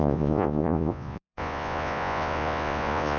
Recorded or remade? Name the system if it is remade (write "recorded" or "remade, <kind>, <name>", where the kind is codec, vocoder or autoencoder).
remade, vocoder, Vocos